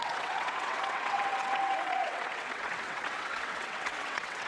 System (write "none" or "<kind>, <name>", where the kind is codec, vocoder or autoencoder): vocoder, WaveNeXt